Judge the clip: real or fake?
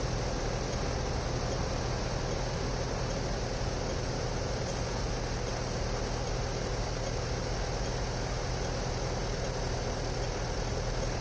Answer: real